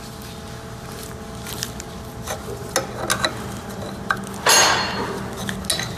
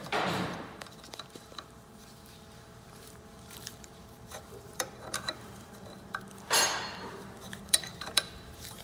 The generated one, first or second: second